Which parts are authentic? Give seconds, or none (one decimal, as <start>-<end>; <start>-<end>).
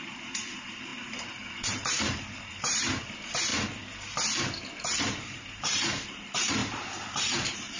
3.5-4.8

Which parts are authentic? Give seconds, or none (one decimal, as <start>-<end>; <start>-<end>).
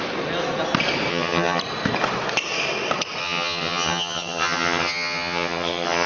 0.0-1.1; 1.6-3.2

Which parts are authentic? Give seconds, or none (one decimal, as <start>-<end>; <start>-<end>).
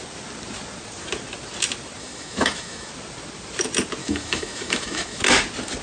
0.0-2.0; 2.9-4.0; 5.2-5.8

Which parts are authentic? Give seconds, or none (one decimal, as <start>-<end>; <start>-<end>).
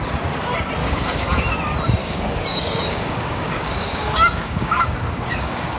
0.0-0.8; 1.4-2.0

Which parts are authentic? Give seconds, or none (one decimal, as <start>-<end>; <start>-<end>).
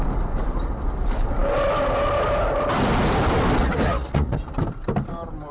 0.0-3.6; 4.6-5.5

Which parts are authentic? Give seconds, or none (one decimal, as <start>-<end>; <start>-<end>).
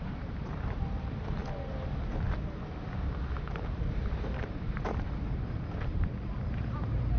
1.4-3.5